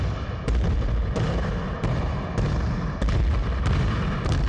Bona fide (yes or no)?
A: no